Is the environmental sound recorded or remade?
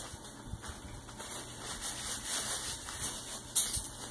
recorded